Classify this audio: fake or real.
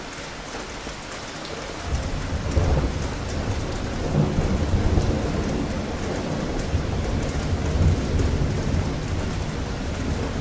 real